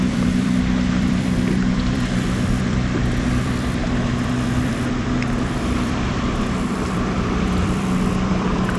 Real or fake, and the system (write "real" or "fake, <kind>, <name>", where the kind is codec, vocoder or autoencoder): fake, vocoder, BigVGAN v2